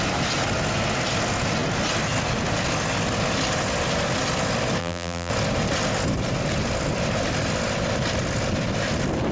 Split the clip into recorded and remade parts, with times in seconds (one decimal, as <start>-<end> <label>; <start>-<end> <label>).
0.0-4.8 recorded; 4.8-5.3 remade; 5.3-9.3 recorded